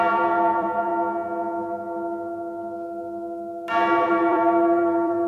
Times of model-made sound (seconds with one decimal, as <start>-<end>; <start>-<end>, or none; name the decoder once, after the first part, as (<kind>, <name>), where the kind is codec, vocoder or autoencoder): 0.0-0.9 (vocoder, BigVGAN v2); 4.1-5.3